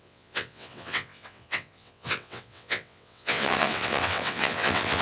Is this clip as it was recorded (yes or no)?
no